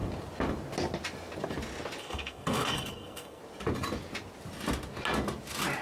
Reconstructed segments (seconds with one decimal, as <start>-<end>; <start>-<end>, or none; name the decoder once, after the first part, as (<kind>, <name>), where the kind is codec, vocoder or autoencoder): 2.0-3.4 (codec, SNAC)